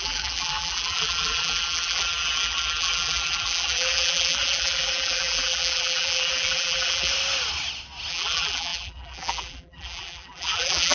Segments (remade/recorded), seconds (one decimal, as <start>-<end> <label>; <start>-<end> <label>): 0.0-7.1 remade; 7.1-8.1 recorded; 8.1-10.9 remade